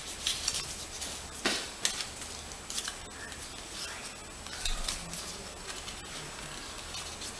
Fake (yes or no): no